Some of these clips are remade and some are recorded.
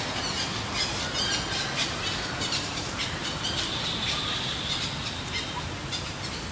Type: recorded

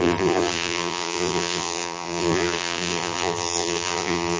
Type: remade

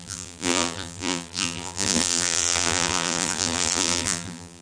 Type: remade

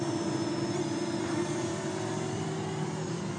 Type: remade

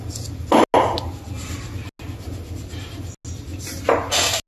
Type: recorded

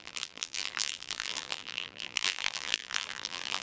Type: remade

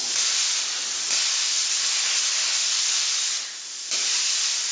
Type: remade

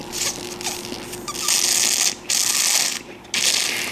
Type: recorded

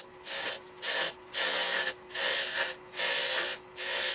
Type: recorded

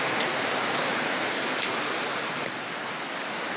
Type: recorded